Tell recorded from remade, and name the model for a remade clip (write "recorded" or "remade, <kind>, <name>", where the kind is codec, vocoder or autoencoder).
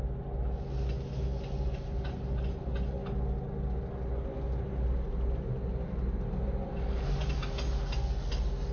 recorded